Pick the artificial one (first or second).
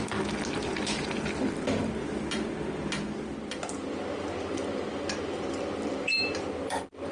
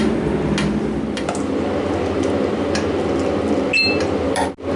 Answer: first